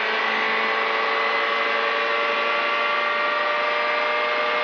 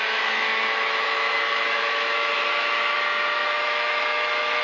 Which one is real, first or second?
first